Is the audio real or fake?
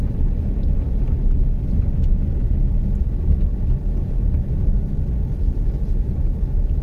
real